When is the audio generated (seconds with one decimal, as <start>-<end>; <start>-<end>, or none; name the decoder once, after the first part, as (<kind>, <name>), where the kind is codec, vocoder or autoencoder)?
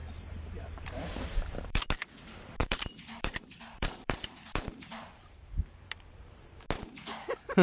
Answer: 0.0-1.8 (vocoder, BigVGAN v2); 2.6-6.4